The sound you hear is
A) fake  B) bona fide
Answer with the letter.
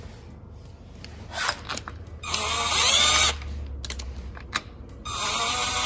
B